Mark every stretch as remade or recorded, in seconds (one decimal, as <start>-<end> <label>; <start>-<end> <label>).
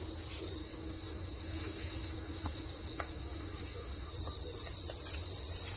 0.0-0.6 recorded; 0.6-4.1 remade; 4.1-5.8 recorded